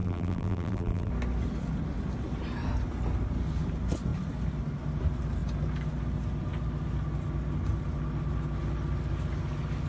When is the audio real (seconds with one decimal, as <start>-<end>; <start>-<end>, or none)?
1.1-9.9